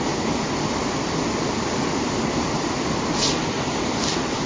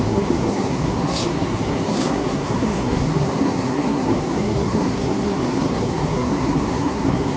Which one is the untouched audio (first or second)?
first